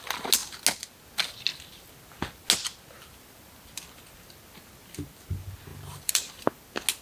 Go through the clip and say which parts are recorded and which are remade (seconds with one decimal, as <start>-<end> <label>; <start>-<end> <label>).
0.0-5.7 recorded; 5.7-6.3 remade; 6.3-7.0 recorded